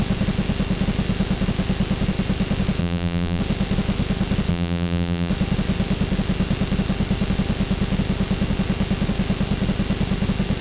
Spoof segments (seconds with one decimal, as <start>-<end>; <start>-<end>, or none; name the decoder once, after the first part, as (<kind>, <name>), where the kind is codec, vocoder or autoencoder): 2.8-3.4 (vocoder, BigVGAN v2); 4.5-5.3